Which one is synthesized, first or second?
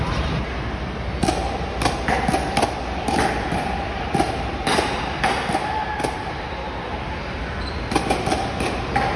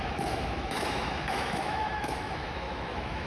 second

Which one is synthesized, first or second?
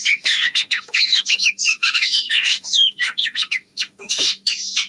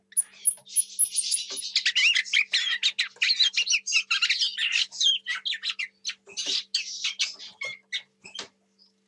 first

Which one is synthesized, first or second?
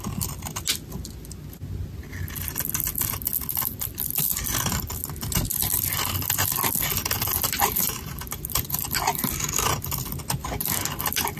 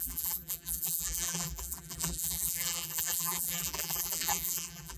second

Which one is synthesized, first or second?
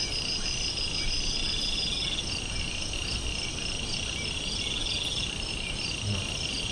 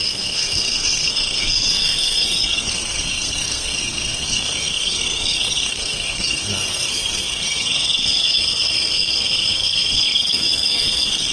second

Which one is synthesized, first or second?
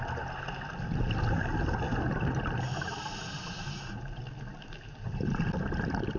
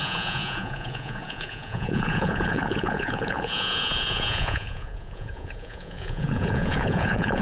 second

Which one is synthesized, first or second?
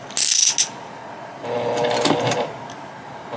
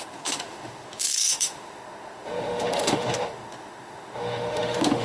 second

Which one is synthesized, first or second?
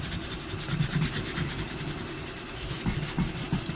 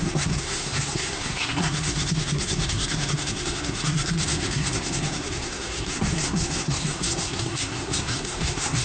second